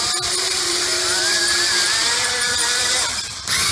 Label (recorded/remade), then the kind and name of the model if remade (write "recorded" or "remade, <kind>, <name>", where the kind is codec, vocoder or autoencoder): remade, vocoder, BigVGAN v2